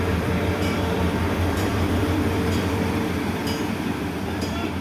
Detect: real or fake fake